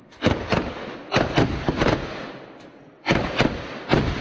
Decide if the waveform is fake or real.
real